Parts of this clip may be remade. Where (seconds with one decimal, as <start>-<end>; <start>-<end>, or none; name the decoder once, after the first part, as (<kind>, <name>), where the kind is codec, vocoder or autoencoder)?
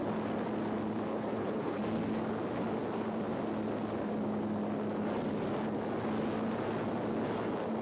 1.1-1.8 (codec, HILCodec)